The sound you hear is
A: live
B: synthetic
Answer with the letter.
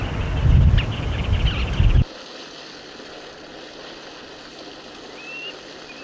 A